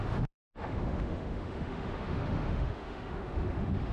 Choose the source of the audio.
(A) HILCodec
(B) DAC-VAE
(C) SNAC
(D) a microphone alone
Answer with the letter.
B